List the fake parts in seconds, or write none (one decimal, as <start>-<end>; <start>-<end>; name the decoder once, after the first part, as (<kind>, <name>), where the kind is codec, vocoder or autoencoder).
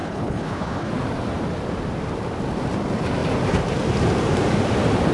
0.0-0.9 (codec, HILCodec)